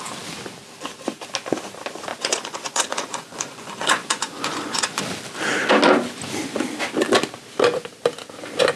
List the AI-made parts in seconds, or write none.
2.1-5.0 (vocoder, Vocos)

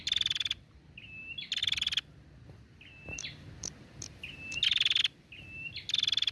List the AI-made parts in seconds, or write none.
none

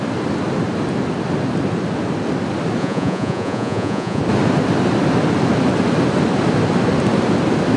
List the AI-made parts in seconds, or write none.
2.8-4.2 (vocoder, Vocos)